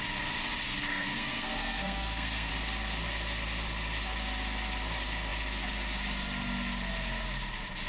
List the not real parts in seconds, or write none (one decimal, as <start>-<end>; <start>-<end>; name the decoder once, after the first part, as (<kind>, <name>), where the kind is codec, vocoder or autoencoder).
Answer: 0.9-2.5 (codec, SNAC)